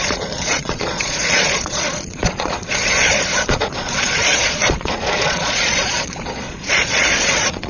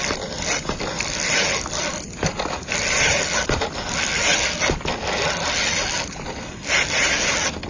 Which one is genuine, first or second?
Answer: second